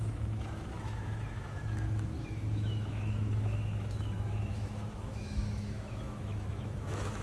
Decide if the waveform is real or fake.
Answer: fake